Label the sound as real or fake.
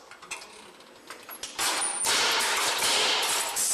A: real